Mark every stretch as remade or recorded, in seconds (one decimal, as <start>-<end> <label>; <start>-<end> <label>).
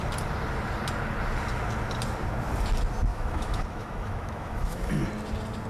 0.0-3.1 recorded; 3.1-4.9 remade; 4.9-5.7 recorded